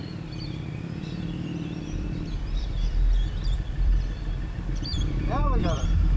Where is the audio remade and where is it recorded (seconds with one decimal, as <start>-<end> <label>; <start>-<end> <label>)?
0.0-4.9 remade; 4.9-5.6 recorded; 5.6-6.2 remade